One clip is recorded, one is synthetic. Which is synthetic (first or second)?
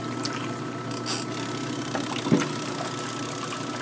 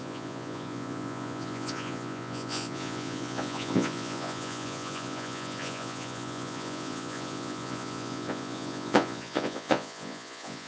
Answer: second